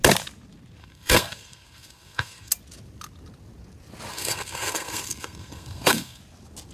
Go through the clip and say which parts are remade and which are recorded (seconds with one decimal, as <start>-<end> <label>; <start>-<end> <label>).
0.0-0.8 recorded; 0.8-2.5 remade; 2.5-4.1 recorded; 4.1-6.2 remade; 6.2-6.7 recorded